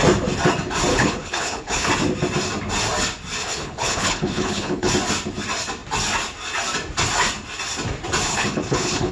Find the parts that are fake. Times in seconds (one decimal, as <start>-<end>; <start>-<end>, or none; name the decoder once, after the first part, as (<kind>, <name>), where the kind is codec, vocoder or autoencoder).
0.9-1.9 (codec, HILCodec); 3.4-4.9; 8.3-9.1